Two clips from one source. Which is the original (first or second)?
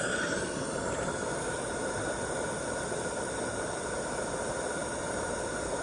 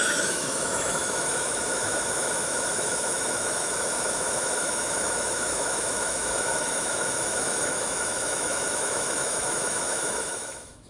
first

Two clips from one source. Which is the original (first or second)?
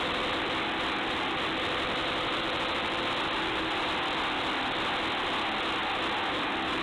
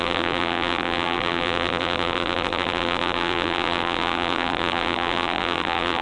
first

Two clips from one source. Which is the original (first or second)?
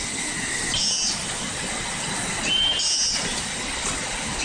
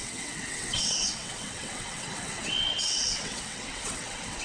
first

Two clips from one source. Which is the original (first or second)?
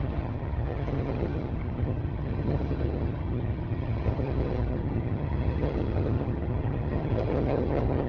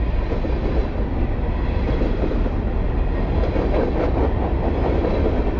second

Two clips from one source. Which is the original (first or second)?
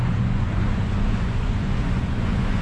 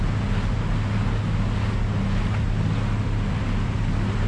second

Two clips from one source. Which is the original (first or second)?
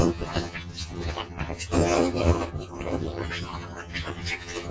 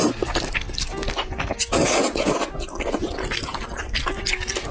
second